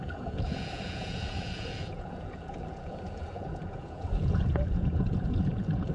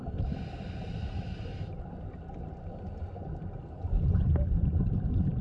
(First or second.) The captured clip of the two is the second